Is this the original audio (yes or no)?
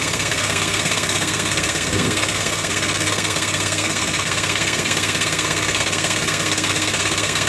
no